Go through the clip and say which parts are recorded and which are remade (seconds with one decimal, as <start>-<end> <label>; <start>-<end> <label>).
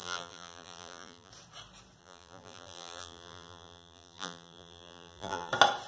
0.0-1.3 remade; 1.3-2.0 recorded; 2.0-5.5 remade; 5.5-5.9 recorded